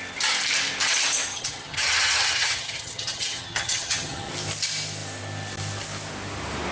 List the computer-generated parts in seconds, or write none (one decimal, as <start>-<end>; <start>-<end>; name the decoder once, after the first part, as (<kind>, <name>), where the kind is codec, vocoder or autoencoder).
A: 1.3-4.3 (vocoder, HiFi-GAN)